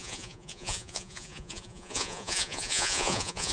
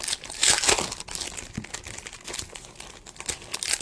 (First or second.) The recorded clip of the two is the second